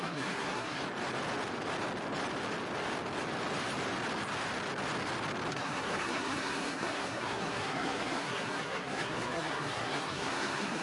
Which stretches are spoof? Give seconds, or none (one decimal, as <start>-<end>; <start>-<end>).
0.0-0.8; 5.5-10.8